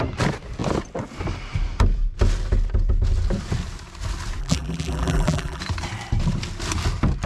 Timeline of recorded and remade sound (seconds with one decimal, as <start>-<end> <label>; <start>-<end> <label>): 0.0-4.4 recorded; 4.4-5.6 remade; 5.6-7.3 recorded